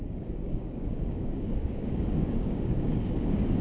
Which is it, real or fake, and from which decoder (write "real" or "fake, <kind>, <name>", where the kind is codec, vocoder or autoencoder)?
fake, codec, DAC